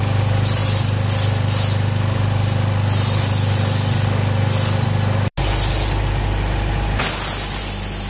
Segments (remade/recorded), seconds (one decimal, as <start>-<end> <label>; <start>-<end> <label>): 0.0-8.1 recorded

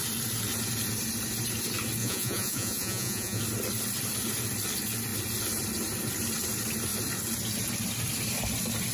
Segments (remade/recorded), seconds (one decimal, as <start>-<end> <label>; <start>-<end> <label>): 0.0-2.0 recorded; 2.0-3.4 remade; 3.4-8.9 recorded

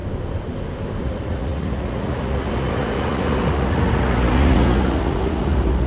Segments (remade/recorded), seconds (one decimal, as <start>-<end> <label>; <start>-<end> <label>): 0.0-1.0 recorded; 1.0-5.9 remade

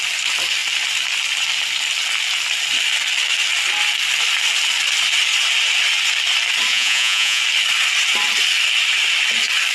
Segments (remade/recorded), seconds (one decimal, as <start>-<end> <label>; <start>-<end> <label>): 0.0-6.7 recorded; 6.7-7.4 remade; 7.4-9.7 recorded

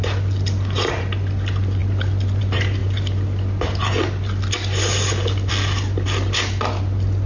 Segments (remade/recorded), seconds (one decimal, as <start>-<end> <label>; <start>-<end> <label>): 0.0-7.3 recorded

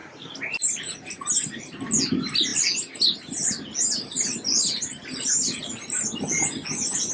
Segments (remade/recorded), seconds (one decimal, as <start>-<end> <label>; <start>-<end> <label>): 0.0-7.1 recorded